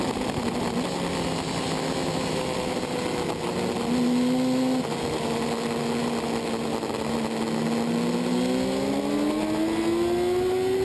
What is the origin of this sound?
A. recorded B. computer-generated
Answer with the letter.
A